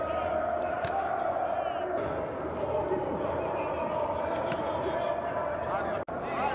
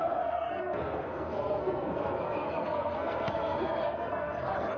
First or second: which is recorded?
first